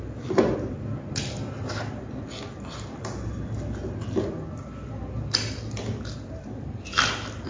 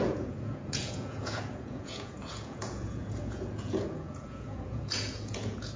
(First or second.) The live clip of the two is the first